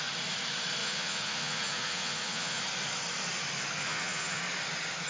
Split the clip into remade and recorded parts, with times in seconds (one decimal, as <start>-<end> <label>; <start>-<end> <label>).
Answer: 0.0-0.8 recorded; 0.8-2.6 remade; 2.6-3.8 recorded; 3.8-4.4 remade; 4.4-5.1 recorded